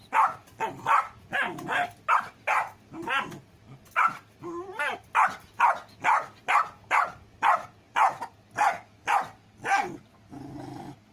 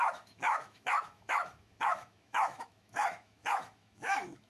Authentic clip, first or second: first